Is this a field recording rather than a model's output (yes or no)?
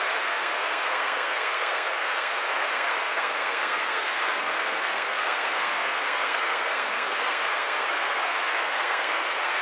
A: no